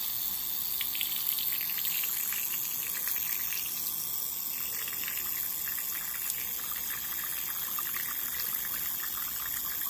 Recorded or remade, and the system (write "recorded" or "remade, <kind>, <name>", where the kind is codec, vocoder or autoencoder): recorded